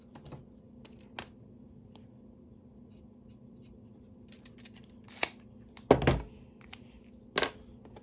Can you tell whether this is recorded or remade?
recorded